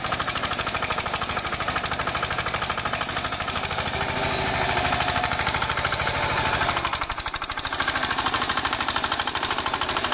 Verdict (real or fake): fake